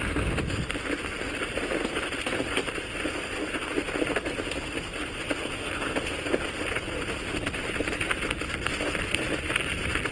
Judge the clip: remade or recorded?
recorded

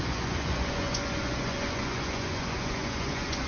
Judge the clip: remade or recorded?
remade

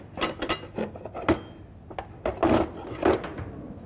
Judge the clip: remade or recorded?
recorded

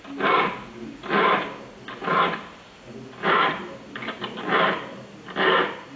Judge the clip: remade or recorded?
recorded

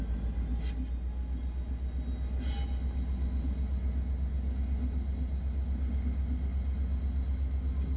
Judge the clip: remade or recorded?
recorded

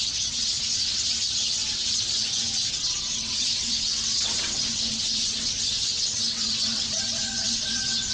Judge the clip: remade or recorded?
remade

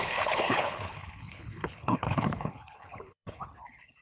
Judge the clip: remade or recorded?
remade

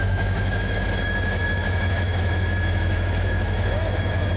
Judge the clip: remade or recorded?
remade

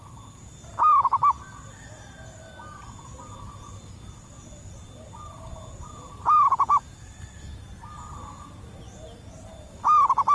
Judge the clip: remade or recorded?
recorded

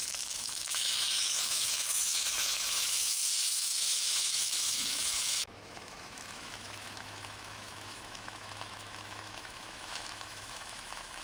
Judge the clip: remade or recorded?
remade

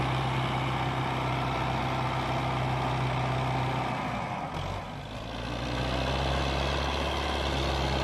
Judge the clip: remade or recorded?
recorded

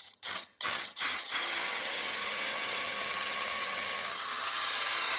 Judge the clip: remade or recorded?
remade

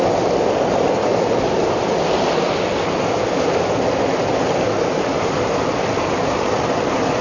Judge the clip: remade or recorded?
recorded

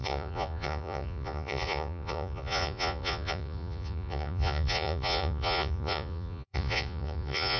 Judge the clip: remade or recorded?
remade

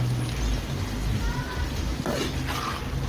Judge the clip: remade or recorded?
recorded